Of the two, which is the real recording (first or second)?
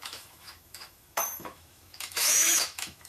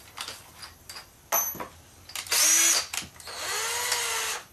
second